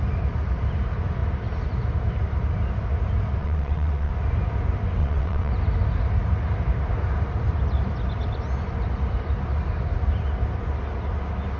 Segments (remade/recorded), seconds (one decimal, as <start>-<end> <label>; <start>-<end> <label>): 0.0-3.4 recorded; 3.4-4.1 remade; 4.1-5.0 recorded; 5.0-5.5 remade; 5.5-11.6 recorded